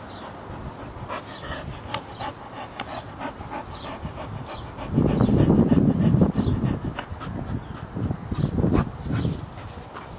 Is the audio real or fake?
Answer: real